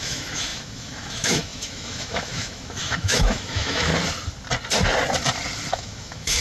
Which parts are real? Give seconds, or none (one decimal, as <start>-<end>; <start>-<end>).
3.9-5.7